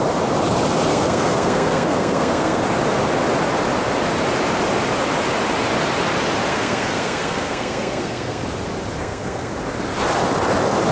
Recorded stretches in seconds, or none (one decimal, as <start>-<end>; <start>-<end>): 0.0-0.9; 2.6-6.5; 8.4-9.0; 9.5-10.9